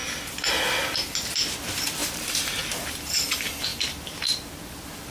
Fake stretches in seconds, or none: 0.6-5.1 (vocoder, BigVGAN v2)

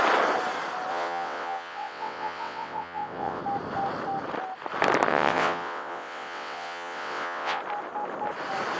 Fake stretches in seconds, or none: 0.9-3.4 (vocoder, WaveNeXt); 5.1-7.6

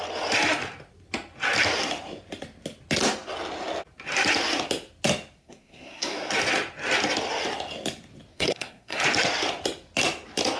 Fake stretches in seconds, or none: 5.4-6.3 (codec, SNAC); 8.3-9.0

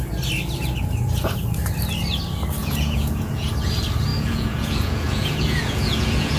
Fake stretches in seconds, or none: 2.6-3.5 (vocoder, Vocos); 4.1-6.4

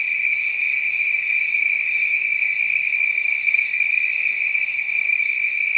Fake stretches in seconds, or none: 2.2-5.8 (codec, SNAC)

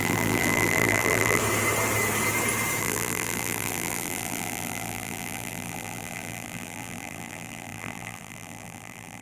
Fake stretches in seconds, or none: 0.0-1.4 (vocoder, BigVGAN v2); 2.8-9.2